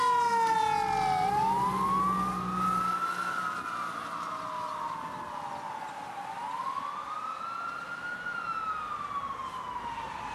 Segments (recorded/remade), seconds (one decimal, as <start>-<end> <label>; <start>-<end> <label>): 0.0-10.3 recorded